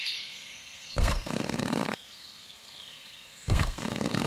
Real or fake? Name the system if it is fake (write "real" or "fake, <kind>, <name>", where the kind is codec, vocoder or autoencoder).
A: fake, codec, SNAC